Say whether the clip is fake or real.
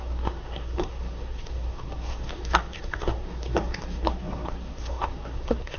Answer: fake